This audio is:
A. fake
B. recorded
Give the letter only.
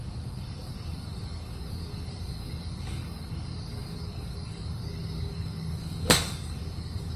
A